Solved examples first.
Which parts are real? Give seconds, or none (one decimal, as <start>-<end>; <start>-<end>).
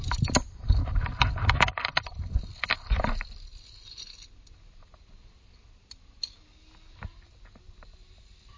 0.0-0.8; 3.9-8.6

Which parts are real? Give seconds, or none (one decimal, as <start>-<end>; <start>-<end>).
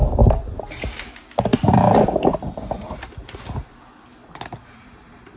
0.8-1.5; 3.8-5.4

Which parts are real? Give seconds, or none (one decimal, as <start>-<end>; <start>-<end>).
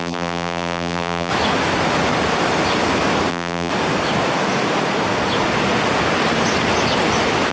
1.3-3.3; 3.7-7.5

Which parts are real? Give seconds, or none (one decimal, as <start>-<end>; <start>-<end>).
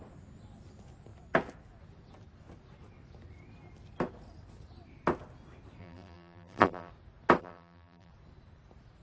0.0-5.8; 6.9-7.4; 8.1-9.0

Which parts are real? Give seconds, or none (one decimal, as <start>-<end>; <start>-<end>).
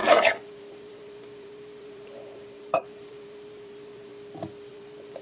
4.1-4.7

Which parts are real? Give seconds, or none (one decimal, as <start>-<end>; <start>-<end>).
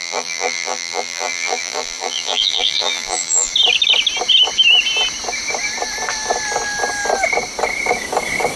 3.5-8.6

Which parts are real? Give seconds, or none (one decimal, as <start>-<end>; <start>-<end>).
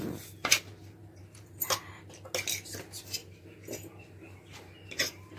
0.0-0.4; 1.9-3.2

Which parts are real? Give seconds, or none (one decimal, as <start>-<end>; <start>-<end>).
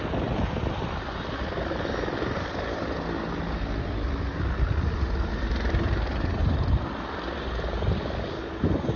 0.0-4.3; 5.5-6.4; 7.5-9.0